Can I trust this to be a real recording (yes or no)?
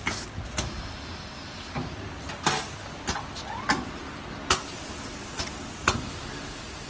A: yes